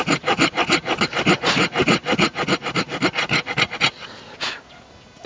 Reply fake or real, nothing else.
real